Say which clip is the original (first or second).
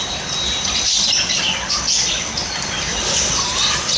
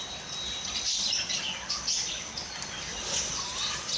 second